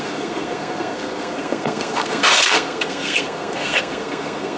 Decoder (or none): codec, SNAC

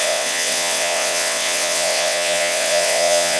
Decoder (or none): vocoder, WaveNeXt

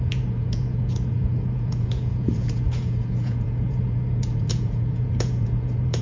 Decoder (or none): vocoder, Vocos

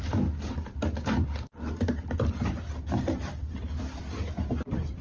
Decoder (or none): none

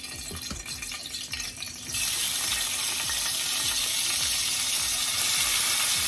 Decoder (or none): none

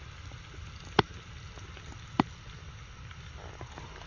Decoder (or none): none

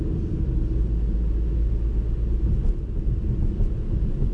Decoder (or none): none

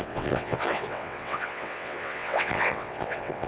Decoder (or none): vocoder, WaveNeXt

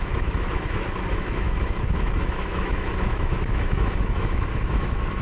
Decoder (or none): autoencoder, DAC-VAE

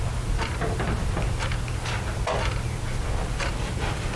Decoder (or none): none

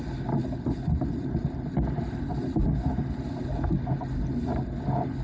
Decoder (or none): none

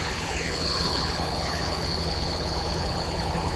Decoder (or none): codec, HILCodec